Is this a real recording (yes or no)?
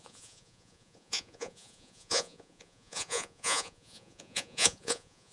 no